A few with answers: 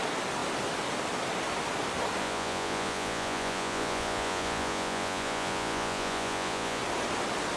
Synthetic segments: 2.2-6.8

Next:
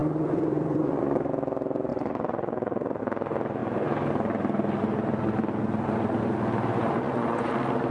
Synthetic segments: 0.0-1.3; 1.9-3.0; 6.7-7.5

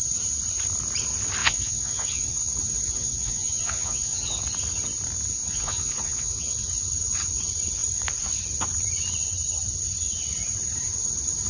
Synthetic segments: 1.4-4.4; 5.4-6.9